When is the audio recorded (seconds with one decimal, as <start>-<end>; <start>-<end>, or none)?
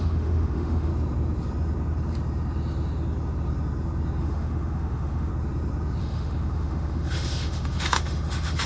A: 0.9-4.2; 5.3-6.0